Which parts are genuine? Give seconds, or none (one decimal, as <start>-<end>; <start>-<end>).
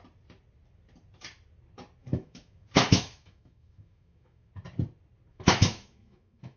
0.0-2.0; 4.5-5.3